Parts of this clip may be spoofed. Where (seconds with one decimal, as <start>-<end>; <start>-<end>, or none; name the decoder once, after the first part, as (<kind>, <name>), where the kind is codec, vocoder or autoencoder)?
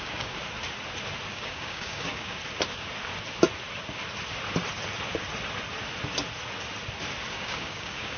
0.0-0.4 (codec, DAC); 1.3-2.4; 7.3-8.2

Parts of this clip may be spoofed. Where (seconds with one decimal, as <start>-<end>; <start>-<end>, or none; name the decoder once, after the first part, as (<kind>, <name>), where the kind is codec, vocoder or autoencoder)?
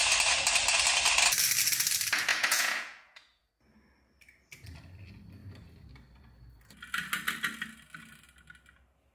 2.3-3.5 (vocoder, Vocos)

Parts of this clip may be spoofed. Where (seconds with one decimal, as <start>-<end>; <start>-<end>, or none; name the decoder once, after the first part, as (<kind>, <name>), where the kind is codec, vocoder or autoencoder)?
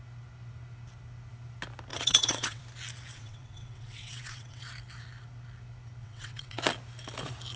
1.9-2.6 (vocoder, WaveNeXt); 3.1-4.7; 6.0-6.6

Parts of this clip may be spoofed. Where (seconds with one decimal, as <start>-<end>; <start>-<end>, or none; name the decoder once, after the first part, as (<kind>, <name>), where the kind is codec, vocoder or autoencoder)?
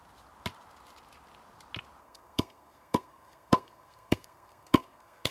2.0-5.3 (codec, SNAC)